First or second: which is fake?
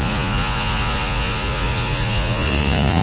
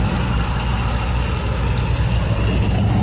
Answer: first